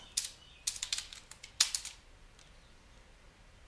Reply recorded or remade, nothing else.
recorded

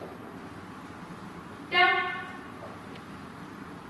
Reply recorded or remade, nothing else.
remade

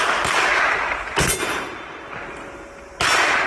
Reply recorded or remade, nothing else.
recorded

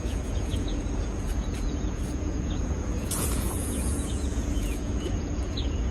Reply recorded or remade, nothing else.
remade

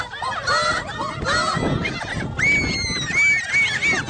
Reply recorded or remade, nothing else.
recorded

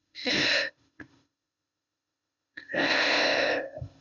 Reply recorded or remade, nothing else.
remade